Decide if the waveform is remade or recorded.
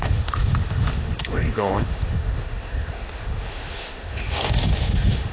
remade